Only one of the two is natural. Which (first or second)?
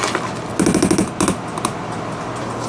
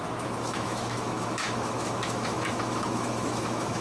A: first